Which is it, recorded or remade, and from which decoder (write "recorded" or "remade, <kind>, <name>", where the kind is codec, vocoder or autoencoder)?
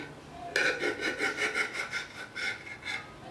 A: recorded